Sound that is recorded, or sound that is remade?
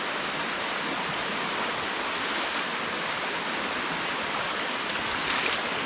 recorded